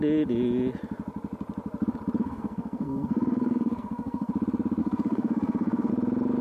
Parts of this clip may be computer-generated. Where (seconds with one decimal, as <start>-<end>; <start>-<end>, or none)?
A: 2.2-4.3; 4.8-5.9